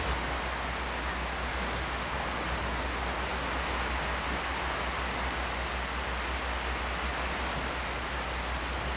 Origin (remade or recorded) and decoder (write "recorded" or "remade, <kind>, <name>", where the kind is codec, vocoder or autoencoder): recorded